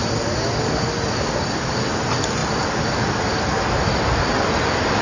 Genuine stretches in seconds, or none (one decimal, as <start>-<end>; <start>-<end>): 0.0-5.0